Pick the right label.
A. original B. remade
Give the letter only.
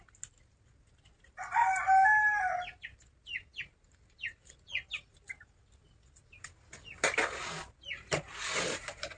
A